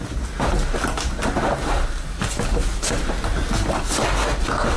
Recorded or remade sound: recorded